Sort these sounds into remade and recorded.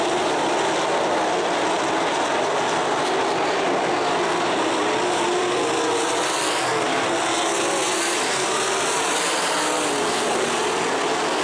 recorded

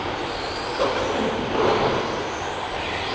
recorded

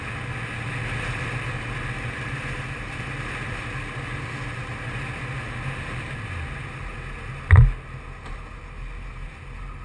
recorded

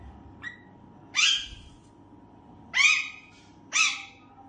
recorded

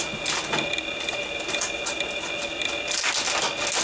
recorded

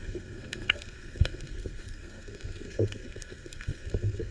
remade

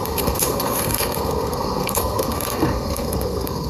remade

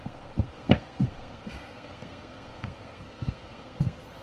remade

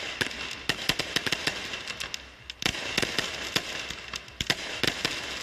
recorded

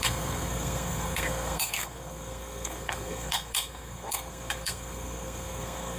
remade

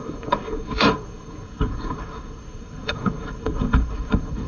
remade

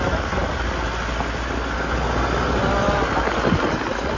recorded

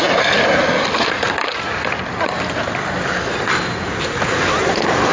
recorded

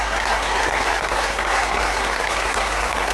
remade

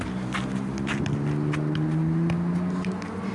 recorded